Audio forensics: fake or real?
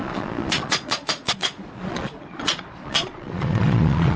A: fake